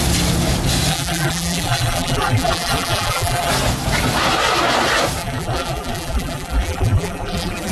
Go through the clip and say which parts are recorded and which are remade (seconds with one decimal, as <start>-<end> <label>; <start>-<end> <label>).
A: 0.0-0.9 recorded; 0.9-3.5 remade; 3.5-5.2 recorded; 5.2-7.7 remade